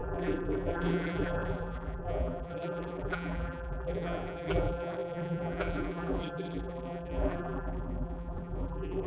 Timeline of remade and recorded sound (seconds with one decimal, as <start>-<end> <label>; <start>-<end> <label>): 0.0-9.1 remade